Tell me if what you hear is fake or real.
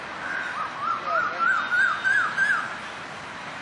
real